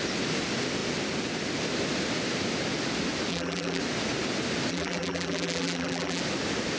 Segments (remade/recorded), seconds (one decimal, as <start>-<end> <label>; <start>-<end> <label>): 0.0-3.3 recorded; 3.3-3.8 remade; 3.8-4.7 recorded; 4.7-6.2 remade; 6.2-6.8 recorded